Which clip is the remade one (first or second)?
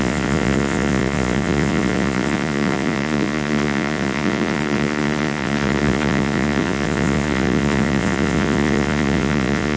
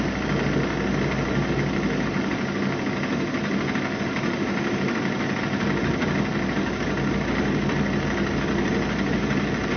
first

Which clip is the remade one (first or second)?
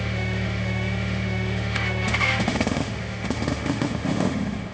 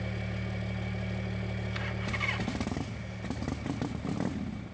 first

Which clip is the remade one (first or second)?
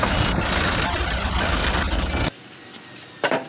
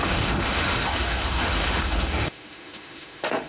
second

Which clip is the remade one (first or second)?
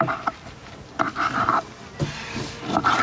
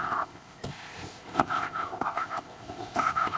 second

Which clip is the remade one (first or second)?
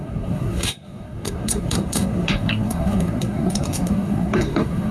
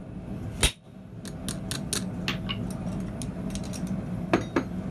first